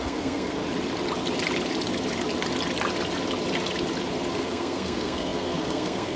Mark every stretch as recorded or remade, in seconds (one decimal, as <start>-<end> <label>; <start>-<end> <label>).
0.0-0.6 remade; 0.6-4.3 recorded; 4.3-6.2 remade